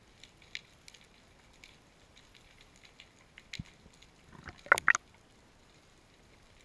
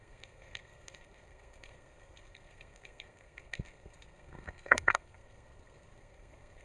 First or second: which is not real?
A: second